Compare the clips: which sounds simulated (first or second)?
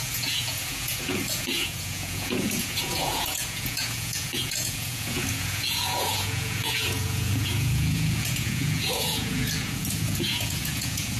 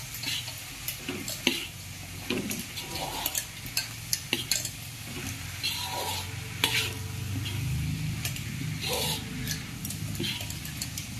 first